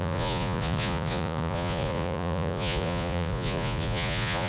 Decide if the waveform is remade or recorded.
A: remade